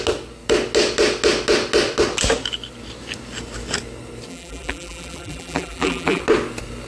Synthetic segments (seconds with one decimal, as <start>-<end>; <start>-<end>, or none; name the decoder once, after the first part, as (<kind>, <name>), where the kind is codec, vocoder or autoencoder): 4.3-6.2 (vocoder, BigVGAN v2)